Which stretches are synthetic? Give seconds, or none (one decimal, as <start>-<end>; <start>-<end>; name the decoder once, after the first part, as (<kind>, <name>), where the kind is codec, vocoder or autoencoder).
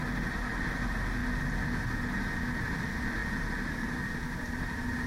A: none